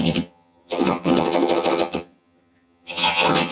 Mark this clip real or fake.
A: fake